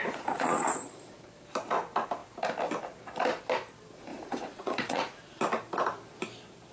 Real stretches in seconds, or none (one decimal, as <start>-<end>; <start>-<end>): 0.9-4.1; 5.2-6.7